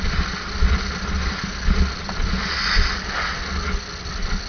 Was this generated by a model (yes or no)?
no